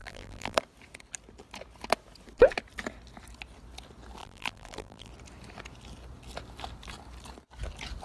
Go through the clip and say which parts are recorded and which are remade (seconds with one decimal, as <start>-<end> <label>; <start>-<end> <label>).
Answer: 0.0-0.6 remade; 0.6-4.2 recorded; 4.2-5.1 remade; 5.1-8.0 recorded